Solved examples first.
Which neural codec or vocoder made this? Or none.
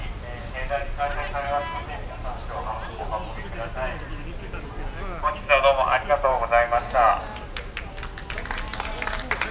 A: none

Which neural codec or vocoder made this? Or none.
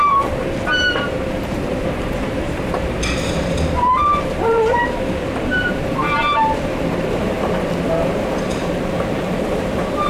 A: vocoder, BigVGAN v2